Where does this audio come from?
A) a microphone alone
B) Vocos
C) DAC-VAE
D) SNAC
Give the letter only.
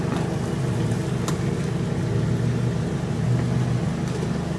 A